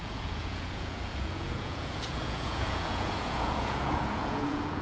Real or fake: fake